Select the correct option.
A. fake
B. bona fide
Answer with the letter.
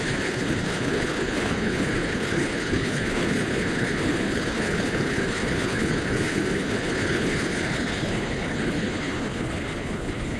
A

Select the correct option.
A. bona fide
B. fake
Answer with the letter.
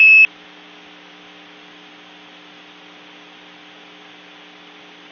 A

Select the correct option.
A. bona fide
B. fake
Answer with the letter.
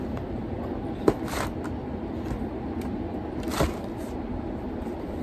B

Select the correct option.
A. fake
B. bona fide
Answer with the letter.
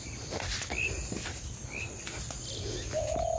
B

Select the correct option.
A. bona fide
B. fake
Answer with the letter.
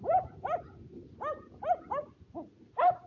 A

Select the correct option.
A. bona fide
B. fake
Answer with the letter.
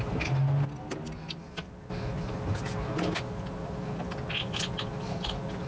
A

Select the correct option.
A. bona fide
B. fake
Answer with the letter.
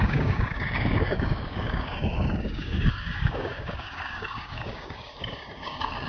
B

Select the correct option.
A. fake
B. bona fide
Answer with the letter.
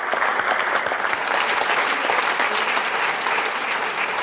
B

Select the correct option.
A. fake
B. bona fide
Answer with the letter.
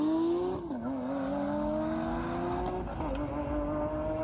B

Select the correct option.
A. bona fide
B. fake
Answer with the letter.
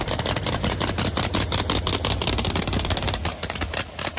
A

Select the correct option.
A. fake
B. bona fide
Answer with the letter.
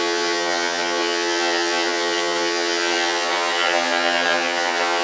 A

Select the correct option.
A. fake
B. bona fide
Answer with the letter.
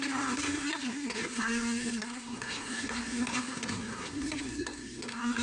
A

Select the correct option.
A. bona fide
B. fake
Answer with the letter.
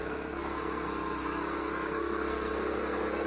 B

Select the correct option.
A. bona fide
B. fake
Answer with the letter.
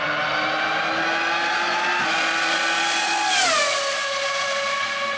A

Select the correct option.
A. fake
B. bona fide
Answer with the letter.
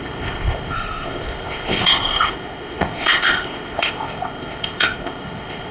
A